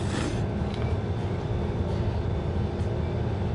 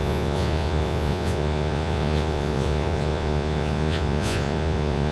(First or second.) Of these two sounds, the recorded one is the first